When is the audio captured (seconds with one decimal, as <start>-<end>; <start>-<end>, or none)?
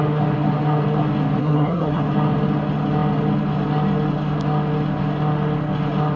0.0-1.4; 2.0-6.2